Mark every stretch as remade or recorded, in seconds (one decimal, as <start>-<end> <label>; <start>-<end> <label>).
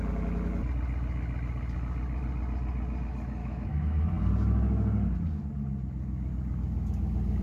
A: 0.0-3.4 recorded; 3.4-4.0 remade; 4.0-7.4 recorded